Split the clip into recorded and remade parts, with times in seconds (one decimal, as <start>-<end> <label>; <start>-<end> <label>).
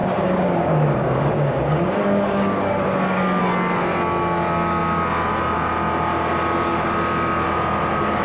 0.0-3.4 remade; 3.4-8.2 recorded